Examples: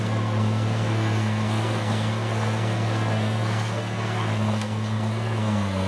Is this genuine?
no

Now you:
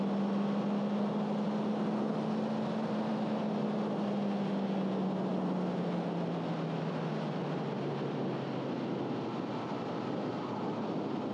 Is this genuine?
yes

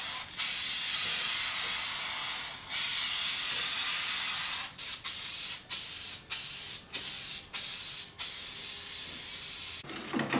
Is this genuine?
yes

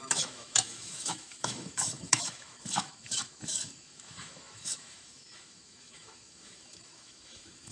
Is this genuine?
no